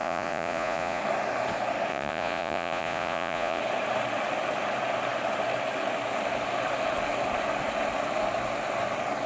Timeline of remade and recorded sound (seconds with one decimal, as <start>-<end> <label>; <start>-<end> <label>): 0.0-1.0 remade; 1.0-1.9 recorded; 1.9-3.6 remade; 3.6-9.3 recorded